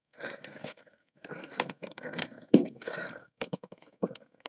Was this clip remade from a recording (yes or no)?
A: yes